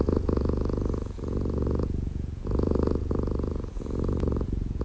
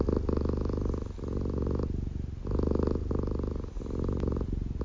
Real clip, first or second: second